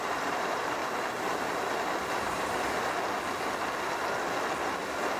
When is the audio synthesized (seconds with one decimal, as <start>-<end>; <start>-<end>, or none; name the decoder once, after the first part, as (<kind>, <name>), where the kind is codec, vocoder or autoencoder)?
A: 0.0-0.8 (vocoder, BigVGAN v2); 2.0-2.8